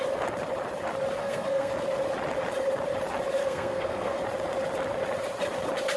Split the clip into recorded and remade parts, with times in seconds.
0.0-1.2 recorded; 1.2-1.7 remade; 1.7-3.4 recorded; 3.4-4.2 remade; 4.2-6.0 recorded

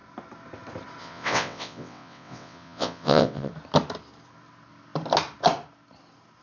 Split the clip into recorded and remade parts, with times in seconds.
0.0-1.0 recorded; 1.0-3.5 remade; 3.5-6.4 recorded

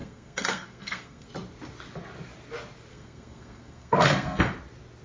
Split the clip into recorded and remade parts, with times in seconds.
0.0-1.3 remade; 1.3-2.9 recorded; 2.9-4.4 remade; 4.4-5.0 recorded

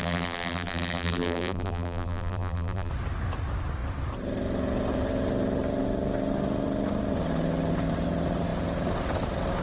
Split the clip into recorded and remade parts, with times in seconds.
0.0-2.9 remade; 2.9-9.6 recorded